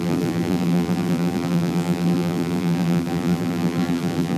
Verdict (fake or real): fake